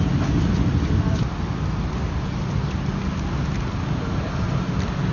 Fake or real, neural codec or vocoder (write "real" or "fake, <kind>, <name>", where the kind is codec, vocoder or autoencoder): real